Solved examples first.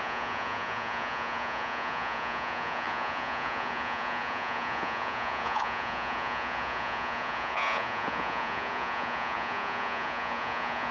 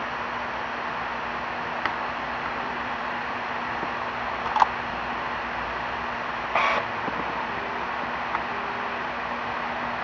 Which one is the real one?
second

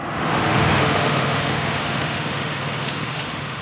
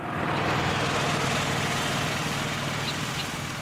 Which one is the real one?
second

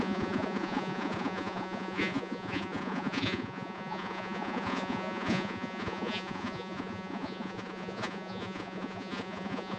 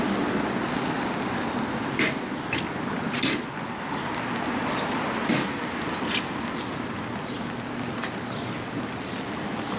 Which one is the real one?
second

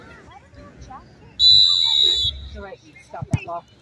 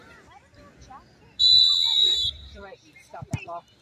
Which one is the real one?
first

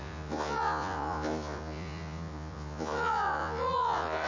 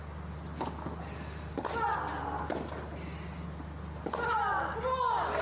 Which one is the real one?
second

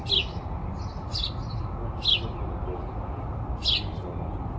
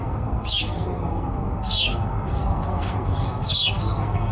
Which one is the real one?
first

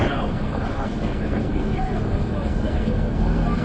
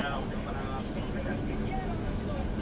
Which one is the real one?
second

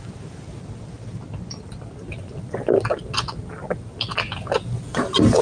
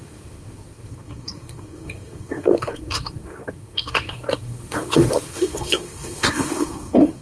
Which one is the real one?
first